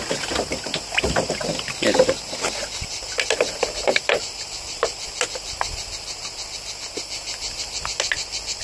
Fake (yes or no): no